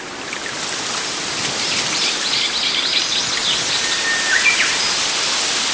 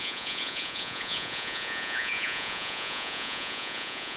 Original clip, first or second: first